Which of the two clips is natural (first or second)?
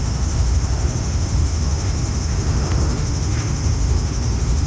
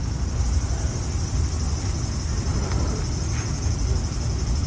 second